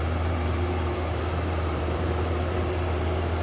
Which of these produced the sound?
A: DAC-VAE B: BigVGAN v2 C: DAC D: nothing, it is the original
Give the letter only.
B